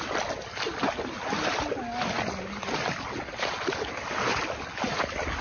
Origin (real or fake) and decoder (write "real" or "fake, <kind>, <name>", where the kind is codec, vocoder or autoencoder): real